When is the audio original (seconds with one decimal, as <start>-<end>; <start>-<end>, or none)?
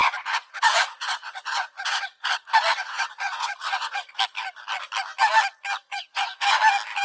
4.2-5.9; 6.6-7.0